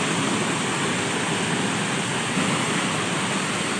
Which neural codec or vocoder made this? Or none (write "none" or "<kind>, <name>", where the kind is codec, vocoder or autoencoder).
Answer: none